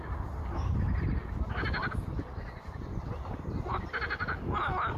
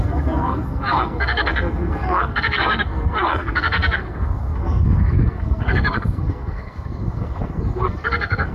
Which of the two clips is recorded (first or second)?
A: first